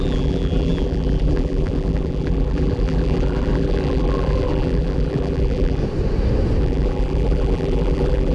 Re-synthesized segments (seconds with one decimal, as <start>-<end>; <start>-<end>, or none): 0.0-5.8; 6.6-8.3